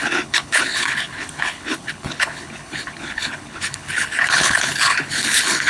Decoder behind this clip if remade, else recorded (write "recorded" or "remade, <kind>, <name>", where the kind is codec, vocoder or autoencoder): remade, codec, HILCodec